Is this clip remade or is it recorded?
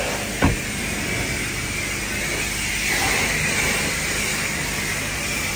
recorded